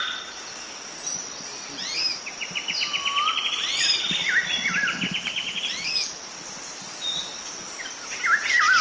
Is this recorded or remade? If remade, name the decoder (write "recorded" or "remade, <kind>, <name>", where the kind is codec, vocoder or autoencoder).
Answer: recorded